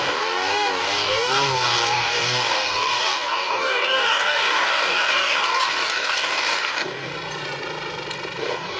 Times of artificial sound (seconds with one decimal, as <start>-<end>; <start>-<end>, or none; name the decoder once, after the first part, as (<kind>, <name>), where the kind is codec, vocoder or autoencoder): 0.0-7.1 (codec, DAC); 8.4-8.8